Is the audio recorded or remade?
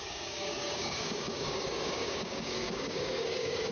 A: remade